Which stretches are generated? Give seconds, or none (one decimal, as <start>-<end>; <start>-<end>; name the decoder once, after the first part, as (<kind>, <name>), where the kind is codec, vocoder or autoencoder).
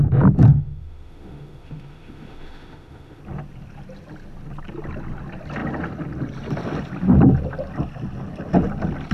0.5-3.2 (autoencoder, DAC-VAE)